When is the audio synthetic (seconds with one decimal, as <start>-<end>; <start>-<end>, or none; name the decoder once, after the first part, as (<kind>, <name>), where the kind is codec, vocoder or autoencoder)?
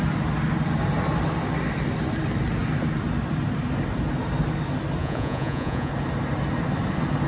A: 5.0-5.9 (vocoder, Vocos)